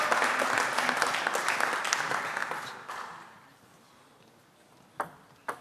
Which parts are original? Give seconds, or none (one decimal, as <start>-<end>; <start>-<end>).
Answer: 0.0-5.6